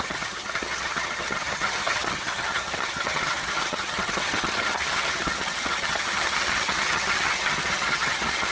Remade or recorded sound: remade